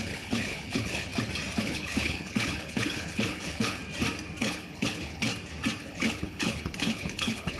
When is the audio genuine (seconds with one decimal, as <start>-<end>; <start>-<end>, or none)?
1.1-1.6; 3.8-4.4; 5.3-5.8